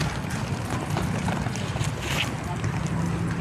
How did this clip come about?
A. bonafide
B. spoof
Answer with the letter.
A